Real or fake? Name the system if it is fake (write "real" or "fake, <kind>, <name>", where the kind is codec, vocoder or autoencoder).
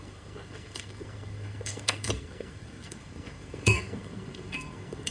fake, codec, SNAC